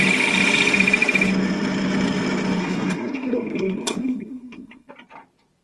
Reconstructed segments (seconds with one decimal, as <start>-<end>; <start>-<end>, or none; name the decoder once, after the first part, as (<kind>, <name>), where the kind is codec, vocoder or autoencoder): 2.6-4.9 (codec, SNAC)